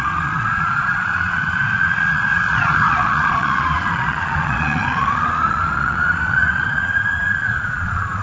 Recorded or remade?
remade